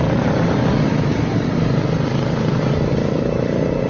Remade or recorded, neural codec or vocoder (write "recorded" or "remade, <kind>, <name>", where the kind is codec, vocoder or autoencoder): recorded